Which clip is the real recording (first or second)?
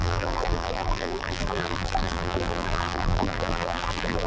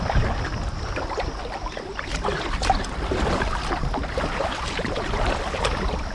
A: second